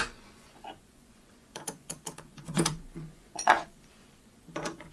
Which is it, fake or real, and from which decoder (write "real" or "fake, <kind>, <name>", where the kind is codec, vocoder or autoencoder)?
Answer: fake, vocoder, Vocos